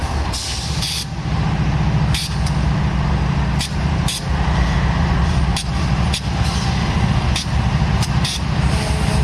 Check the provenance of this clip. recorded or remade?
recorded